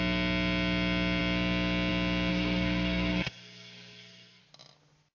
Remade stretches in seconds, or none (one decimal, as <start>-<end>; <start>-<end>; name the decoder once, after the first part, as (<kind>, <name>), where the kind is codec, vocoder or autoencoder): 2.3-4.4 (codec, SNAC)